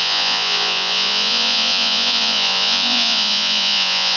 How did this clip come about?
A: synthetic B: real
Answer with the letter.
A